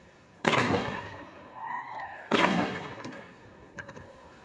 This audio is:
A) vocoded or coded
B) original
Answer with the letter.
A